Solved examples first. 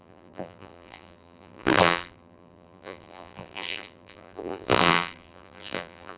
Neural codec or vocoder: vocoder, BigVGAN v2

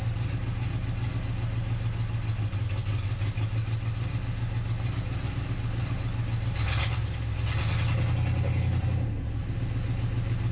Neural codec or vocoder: none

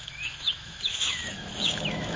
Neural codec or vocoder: autoencoder, DAC-VAE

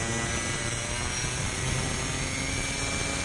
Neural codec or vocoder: none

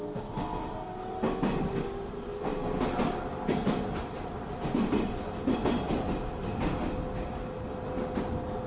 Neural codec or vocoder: none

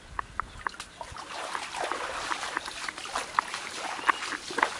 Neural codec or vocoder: none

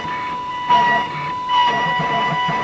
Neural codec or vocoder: none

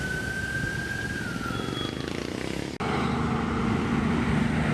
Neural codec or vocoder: none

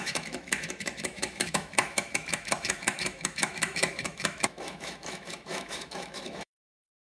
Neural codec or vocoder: autoencoder, DAC-VAE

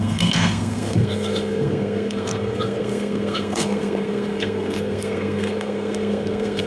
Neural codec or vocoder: codec, SNAC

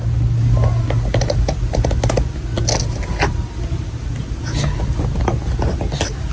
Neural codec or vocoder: none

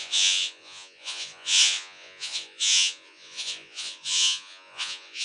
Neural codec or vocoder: vocoder, Vocos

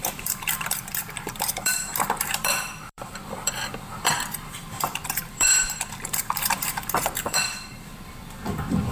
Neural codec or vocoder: vocoder, BigVGAN v2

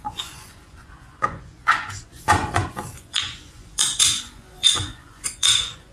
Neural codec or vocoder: vocoder, Vocos